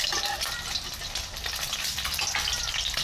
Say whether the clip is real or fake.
real